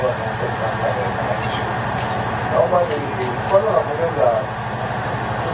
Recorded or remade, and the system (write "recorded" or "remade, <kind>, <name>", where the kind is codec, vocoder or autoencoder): recorded